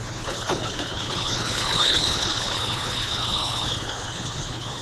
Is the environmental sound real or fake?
fake